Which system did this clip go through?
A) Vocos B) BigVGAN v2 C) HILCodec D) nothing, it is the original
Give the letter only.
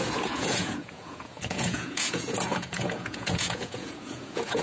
A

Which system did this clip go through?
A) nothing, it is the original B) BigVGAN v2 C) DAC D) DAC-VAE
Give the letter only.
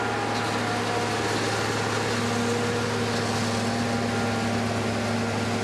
A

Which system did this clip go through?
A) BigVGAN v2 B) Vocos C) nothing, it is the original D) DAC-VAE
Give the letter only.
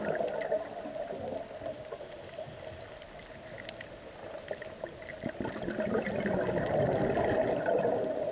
C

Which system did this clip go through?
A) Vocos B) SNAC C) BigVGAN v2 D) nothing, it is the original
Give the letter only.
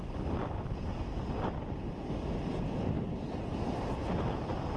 D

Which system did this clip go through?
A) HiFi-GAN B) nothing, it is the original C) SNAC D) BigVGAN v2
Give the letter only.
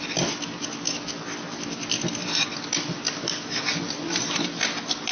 B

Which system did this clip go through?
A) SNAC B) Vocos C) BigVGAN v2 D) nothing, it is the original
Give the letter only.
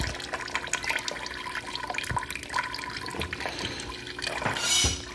D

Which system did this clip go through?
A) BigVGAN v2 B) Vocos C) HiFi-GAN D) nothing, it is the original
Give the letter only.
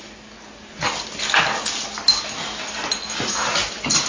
D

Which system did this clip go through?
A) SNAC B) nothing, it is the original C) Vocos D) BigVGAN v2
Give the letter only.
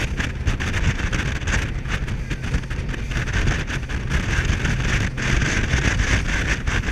B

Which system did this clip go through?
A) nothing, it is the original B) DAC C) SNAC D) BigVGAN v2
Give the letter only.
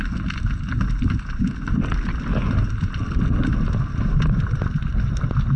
A